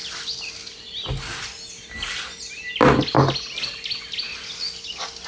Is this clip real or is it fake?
real